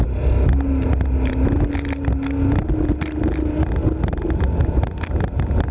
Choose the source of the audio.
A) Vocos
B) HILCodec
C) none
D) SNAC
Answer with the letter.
C